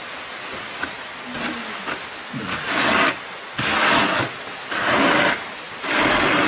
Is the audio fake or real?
real